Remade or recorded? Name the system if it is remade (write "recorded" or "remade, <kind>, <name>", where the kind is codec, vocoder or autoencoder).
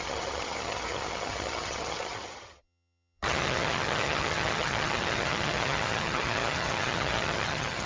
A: remade, vocoder, HiFi-GAN